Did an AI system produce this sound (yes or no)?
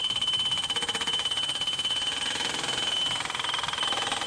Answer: yes